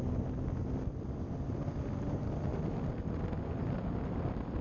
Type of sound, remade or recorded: recorded